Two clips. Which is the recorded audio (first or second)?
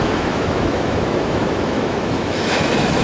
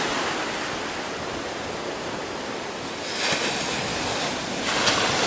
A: second